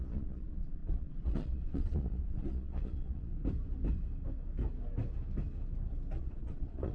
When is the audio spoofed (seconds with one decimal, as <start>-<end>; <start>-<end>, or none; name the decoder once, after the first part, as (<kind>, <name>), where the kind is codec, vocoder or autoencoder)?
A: 0.0-3.3 (vocoder, Vocos); 6.2-6.9